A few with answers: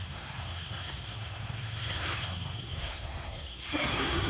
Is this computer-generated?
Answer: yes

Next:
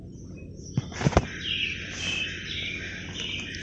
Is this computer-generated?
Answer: no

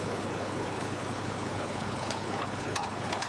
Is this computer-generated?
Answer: yes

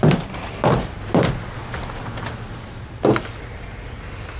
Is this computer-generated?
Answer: no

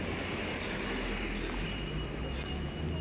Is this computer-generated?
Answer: no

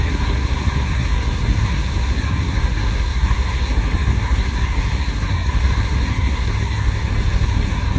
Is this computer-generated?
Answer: yes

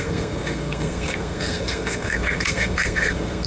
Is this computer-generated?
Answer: yes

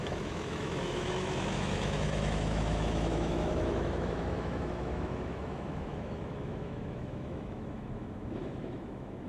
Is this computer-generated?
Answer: yes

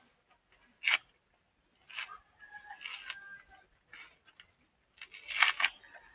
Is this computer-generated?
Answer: no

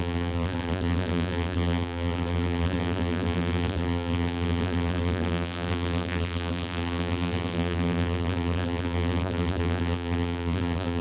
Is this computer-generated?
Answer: yes